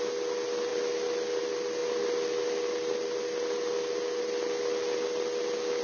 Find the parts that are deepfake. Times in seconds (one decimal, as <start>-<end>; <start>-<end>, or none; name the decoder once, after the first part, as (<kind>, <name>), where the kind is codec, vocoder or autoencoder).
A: none